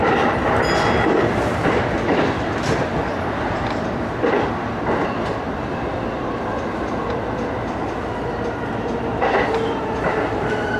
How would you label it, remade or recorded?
remade